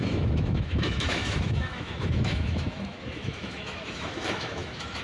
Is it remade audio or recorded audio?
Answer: remade